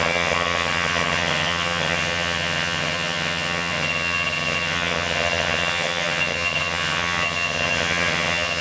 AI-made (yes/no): yes